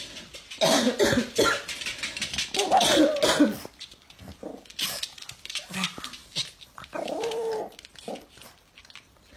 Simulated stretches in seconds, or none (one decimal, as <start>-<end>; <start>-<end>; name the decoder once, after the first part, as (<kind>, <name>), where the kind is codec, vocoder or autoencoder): none